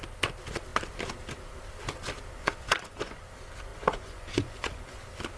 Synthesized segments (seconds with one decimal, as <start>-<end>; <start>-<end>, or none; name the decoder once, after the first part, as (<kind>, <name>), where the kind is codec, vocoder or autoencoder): 2.4-3.2 (vocoder, Vocos); 3.7-5.0